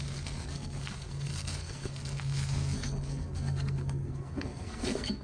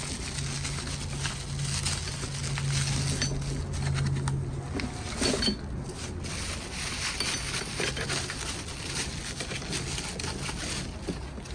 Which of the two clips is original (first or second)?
second